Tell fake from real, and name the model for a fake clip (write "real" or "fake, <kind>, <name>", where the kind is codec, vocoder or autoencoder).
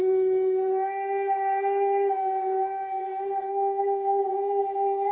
fake, codec, SNAC